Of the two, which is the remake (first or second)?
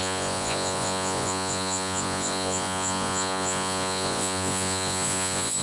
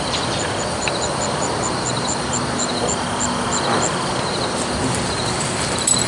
first